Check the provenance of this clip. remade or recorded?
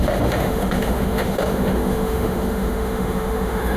remade